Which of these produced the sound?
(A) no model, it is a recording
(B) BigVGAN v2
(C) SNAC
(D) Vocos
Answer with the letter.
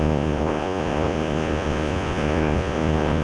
D